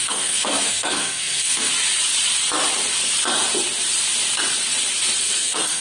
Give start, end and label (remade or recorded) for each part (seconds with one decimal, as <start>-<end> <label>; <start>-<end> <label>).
0.0-1.7 remade; 1.7-5.2 recorded; 5.2-5.8 remade